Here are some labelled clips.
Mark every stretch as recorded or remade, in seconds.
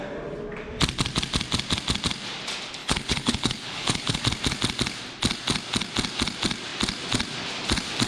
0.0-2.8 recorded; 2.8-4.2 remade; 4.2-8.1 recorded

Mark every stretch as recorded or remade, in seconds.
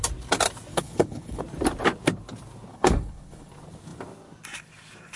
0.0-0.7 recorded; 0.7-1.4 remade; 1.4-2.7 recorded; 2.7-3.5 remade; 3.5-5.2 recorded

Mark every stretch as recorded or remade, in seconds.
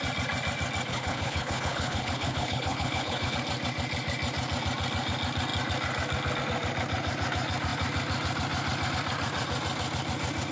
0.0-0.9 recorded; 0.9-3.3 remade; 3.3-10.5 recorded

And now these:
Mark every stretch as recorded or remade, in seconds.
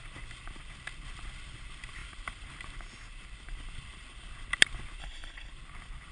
0.0-5.0 recorded; 5.0-5.5 remade; 5.5-6.1 recorded